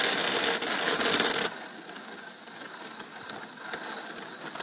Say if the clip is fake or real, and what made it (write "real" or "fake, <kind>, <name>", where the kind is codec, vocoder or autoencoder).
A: real